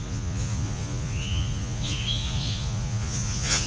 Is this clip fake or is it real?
fake